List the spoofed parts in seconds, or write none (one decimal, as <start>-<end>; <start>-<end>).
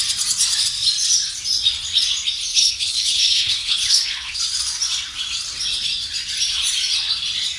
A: 2.5-4.4